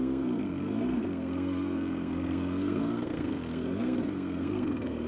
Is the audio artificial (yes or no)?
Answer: yes